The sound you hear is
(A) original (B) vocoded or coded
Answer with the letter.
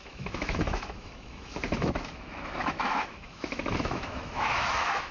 B